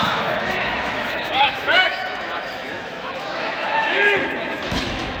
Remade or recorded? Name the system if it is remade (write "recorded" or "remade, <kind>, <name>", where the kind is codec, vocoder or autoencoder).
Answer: remade, autoencoder, DAC-VAE